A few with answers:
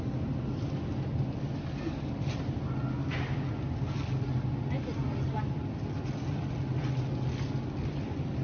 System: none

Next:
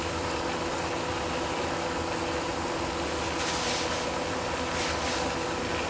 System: none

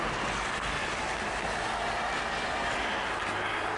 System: none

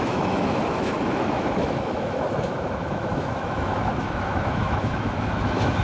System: autoencoder, DAC-VAE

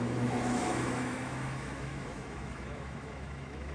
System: autoencoder, DAC-VAE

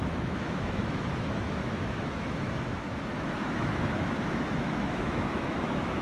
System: autoencoder, DAC-VAE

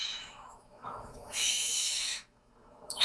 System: autoencoder, DAC-VAE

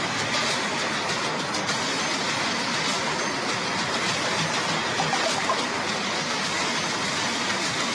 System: none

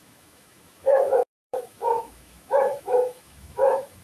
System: autoencoder, DAC-VAE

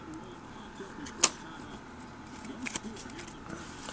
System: none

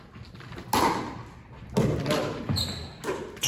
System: none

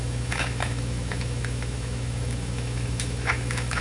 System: autoencoder, DAC-VAE